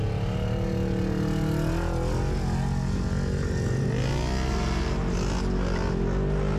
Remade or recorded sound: recorded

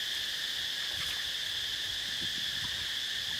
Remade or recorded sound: recorded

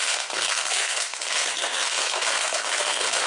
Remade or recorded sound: remade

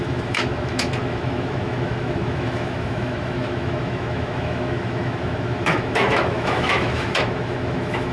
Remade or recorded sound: remade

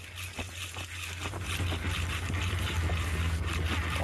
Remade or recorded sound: recorded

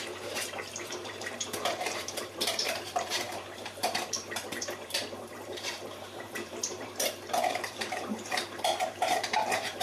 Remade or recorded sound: remade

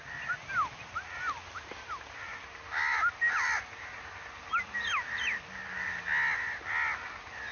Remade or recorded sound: recorded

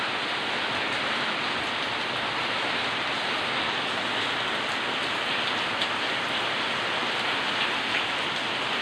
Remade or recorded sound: recorded